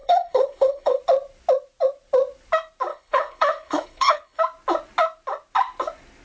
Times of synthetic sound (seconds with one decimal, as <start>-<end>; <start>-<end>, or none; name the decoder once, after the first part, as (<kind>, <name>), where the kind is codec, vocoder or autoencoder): 0.0-1.0 (codec, HILCodec); 2.9-4.4